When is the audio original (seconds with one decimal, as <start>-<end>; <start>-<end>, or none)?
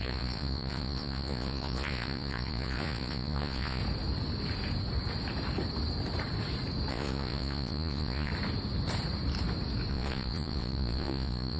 3.8-6.9; 8.3-9.9